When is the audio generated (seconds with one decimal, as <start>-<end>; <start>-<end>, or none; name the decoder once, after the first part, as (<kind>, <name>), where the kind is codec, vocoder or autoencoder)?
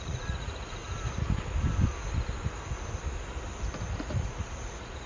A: 0.0-0.8 (vocoder, Vocos); 3.9-5.1